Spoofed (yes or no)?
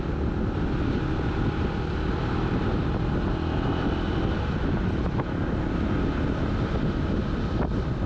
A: no